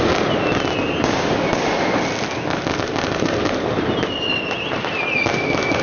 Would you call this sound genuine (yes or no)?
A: yes